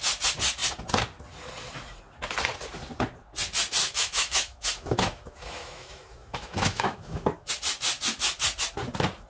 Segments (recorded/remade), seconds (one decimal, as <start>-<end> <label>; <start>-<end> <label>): 0.0-3.8 recorded; 3.8-7.5 remade; 7.5-9.3 recorded

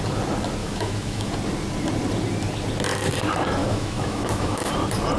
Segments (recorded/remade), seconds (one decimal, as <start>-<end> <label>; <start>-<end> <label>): 0.0-0.6 recorded; 0.6-1.3 remade; 1.3-3.6 recorded; 3.6-4.7 remade; 4.7-5.2 recorded